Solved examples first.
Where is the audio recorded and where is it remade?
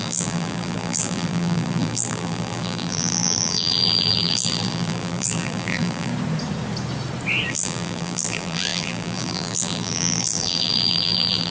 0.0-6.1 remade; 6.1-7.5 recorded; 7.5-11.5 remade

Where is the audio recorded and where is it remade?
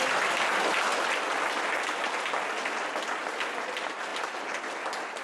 0.0-5.2 recorded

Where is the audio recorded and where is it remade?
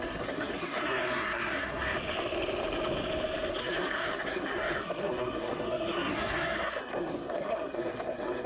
0.0-1.8 remade; 1.8-3.6 recorded; 3.6-8.5 remade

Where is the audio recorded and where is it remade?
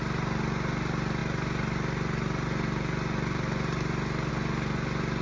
0.0-5.2 recorded